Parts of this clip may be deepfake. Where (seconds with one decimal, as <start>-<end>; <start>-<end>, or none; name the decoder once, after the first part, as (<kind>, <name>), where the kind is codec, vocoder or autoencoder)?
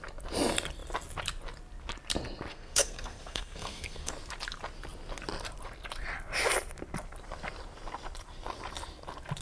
2.5-4.1 (codec, SNAC)